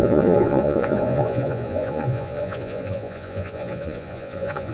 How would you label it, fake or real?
fake